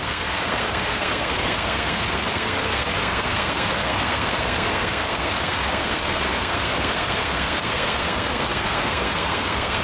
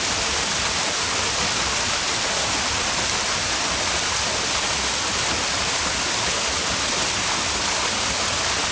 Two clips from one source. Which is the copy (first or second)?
first